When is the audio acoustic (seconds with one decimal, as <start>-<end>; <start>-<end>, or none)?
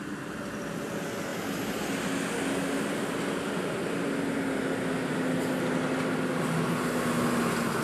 0.0-7.8